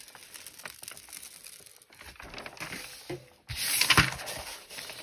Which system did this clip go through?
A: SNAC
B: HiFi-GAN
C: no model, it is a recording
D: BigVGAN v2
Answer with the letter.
C